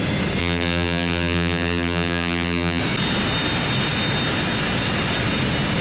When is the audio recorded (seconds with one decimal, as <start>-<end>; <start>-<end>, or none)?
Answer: 0.0-0.4; 2.8-5.8